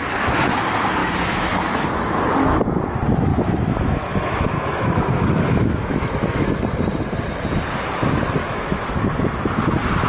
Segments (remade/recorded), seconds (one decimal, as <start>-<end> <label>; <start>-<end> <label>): 0.0-1.0 recorded; 1.0-2.2 remade; 2.2-3.3 recorded; 3.3-6.5 remade; 6.5-8.4 recorded; 8.4-9.0 remade; 9.0-10.1 recorded